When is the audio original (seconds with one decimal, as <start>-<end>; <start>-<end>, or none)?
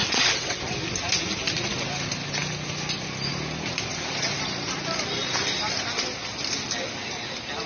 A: 0.6-7.7